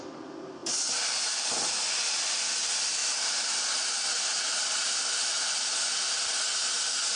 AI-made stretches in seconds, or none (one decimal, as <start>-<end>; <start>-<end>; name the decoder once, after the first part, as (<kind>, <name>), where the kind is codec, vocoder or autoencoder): 0.6-1.9 (vocoder, BigVGAN v2); 3.0-3.6; 4.3-4.8